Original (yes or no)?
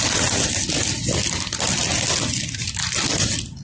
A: yes